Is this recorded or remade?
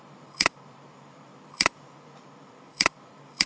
remade